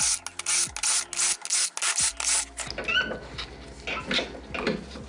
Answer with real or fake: real